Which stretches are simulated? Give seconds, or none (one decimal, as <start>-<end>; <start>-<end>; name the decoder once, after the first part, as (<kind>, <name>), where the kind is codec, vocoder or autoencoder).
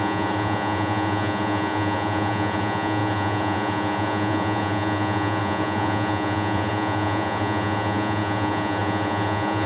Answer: 0.0-9.7 (vocoder, Vocos)